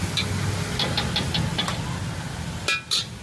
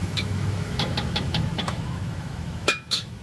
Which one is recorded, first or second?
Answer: first